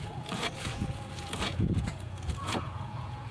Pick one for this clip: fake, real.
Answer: fake